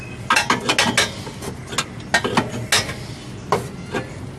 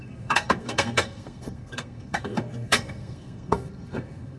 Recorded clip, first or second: first